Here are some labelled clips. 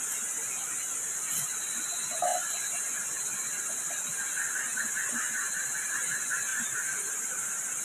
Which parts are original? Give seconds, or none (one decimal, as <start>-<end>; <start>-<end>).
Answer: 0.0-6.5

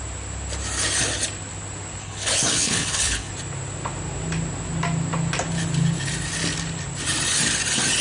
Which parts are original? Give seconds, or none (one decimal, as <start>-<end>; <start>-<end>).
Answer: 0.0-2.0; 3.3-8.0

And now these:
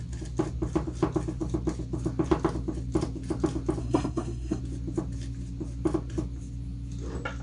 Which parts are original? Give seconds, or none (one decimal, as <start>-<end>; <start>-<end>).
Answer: 0.0-3.8; 4.6-7.4

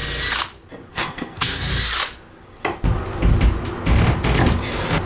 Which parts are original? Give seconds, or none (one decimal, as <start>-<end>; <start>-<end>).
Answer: 0.0-0.9; 1.7-5.1

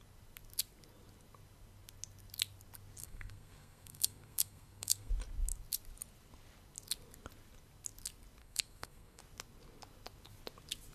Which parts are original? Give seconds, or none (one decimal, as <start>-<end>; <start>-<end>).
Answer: 0.0-3.0; 5.1-8.4; 9.2-10.9

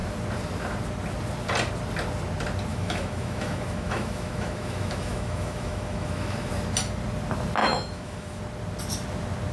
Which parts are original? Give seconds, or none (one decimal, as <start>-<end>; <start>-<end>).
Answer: 0.0-2.7; 6.5-7.6; 8.4-9.5